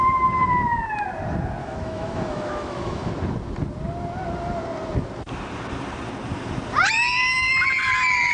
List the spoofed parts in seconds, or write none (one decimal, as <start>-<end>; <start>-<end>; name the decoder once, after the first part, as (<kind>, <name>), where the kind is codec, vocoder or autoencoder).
1.6-3.1 (autoencoder, DAC-VAE)